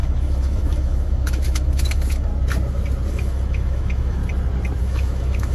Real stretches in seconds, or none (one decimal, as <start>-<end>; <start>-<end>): 2.3-3.1; 4.2-4.8